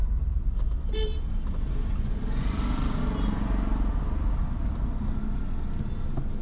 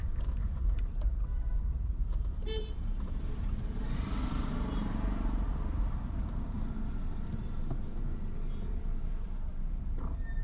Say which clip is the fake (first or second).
second